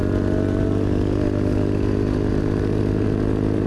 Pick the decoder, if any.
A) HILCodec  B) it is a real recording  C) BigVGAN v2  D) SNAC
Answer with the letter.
B